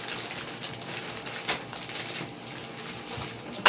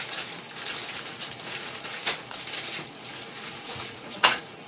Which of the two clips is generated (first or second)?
second